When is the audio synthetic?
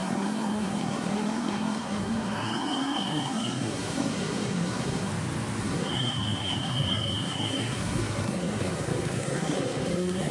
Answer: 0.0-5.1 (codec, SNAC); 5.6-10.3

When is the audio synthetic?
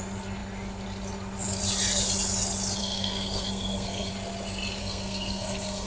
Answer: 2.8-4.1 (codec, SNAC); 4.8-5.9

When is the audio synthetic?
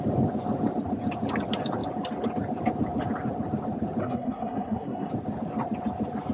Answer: 4.0-5.1 (codec, SNAC)